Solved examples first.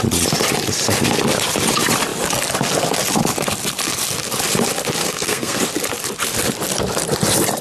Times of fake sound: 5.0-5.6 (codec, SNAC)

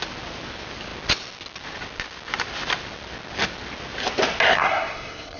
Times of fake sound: 4.5-5.4 (codec, SNAC)

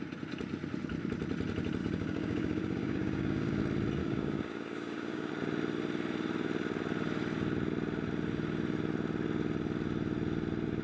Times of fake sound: 1.8-3.6 (codec, DAC); 4.0-5.3

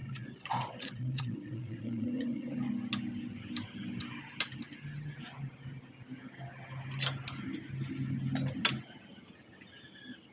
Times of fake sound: 0.0-2.7 (vocoder, Vocos)

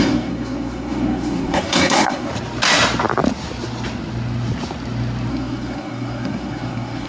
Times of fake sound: 0.0-2.3 (codec, SNAC); 5.3-7.1